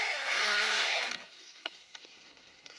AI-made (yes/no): yes